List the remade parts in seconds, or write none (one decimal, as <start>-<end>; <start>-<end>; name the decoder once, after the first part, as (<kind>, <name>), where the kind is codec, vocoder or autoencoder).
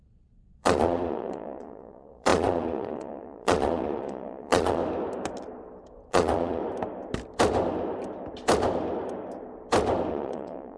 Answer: 0.0-4.8 (vocoder, Vocos); 6.1-6.6; 10.1-10.8